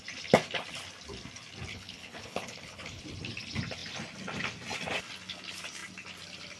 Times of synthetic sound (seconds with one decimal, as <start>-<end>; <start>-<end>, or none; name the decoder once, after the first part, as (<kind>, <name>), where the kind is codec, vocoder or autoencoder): 1.7-3.0 (codec, HILCodec)